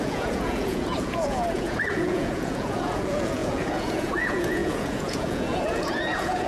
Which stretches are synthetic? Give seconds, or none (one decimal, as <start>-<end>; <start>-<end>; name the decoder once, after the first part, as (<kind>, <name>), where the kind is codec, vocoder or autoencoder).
0.0-6.5 (vocoder, Vocos)